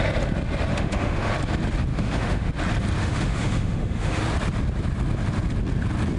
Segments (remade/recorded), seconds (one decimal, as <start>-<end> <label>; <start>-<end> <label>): 0.0-0.7 recorded; 0.7-1.3 remade; 1.3-1.9 recorded; 1.9-2.5 remade; 2.5-3.0 recorded; 3.0-4.2 remade; 4.2-6.2 recorded